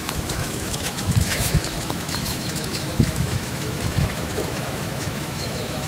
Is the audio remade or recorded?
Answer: remade